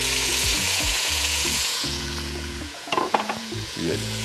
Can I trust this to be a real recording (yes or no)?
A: no